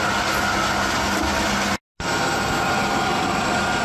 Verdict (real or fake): real